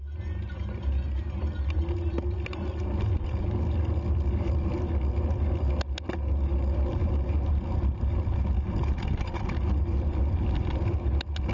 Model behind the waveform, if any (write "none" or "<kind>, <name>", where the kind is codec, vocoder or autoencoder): none